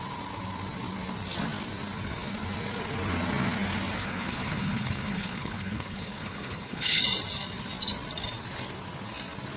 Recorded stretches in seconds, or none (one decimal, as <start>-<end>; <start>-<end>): 0.0-4.0; 7.0-9.6